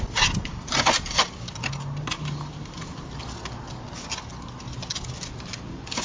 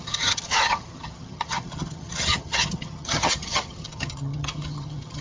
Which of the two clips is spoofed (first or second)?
second